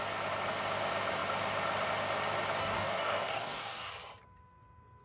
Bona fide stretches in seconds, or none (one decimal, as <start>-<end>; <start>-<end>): 0.0-2.6; 3.9-5.0